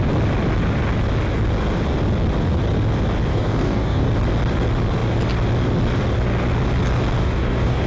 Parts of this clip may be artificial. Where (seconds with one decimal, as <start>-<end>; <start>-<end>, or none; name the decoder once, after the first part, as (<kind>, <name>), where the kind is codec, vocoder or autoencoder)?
3.3-4.1 (codec, DAC); 7.2-7.9